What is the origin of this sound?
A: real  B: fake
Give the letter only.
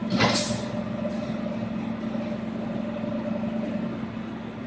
A